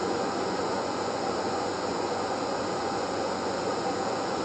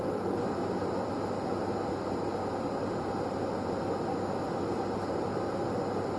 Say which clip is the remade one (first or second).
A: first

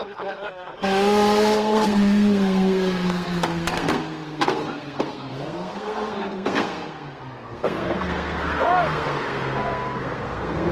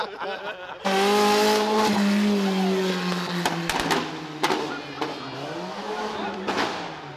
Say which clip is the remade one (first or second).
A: first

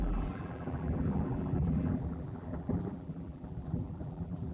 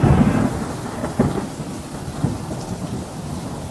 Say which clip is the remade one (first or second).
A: first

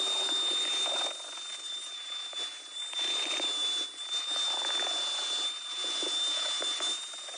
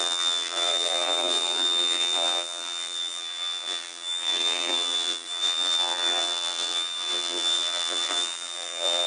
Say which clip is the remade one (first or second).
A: second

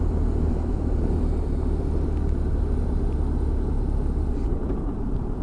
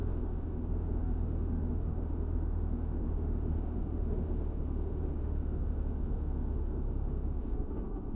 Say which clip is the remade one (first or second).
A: second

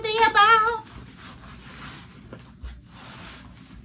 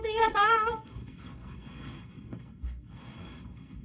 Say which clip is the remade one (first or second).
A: second